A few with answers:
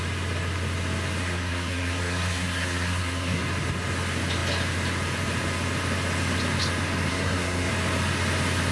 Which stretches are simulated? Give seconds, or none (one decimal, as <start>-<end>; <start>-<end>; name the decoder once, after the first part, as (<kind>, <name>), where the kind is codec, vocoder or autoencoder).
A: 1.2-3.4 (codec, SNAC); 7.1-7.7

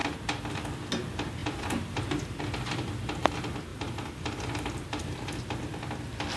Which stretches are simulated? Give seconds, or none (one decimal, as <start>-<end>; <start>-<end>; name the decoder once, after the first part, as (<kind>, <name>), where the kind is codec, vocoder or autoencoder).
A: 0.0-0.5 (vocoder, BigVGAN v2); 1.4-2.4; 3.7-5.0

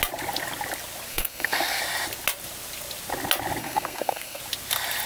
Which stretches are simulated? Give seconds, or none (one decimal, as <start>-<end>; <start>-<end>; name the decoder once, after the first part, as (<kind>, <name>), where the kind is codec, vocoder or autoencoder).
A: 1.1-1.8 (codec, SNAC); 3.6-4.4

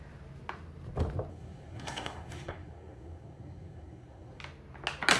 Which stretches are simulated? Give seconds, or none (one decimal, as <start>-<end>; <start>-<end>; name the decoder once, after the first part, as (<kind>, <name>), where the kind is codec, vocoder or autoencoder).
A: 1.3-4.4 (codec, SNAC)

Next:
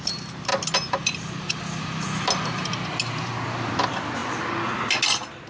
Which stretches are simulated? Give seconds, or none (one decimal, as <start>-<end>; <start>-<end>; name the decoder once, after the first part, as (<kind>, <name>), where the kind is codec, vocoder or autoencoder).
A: none

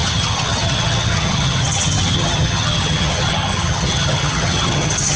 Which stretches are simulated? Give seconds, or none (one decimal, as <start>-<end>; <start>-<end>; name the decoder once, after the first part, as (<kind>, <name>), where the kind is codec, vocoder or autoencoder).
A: 0.0-5.2 (vocoder, HiFi-GAN)

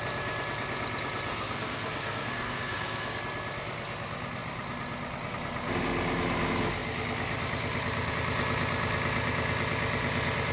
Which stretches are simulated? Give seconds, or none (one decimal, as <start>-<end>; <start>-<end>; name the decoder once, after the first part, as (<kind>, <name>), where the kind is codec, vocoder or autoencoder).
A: 1.3-3.2 (codec, SNAC)

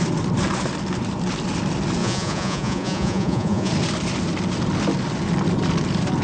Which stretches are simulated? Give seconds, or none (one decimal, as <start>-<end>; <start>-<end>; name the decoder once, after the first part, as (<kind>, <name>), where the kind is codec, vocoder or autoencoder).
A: 2.0-3.7 (vocoder, Vocos)